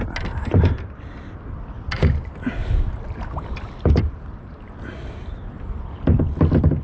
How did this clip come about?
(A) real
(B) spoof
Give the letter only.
A